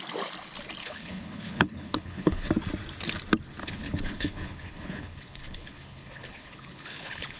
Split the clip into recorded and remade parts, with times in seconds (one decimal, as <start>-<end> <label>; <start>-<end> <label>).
0.0-0.8 recorded; 0.8-2.5 remade; 2.5-3.6 recorded; 3.6-7.4 remade